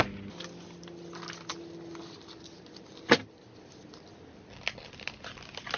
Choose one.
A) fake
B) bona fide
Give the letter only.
B